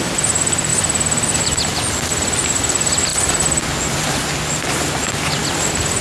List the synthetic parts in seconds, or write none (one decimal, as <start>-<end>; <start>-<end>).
none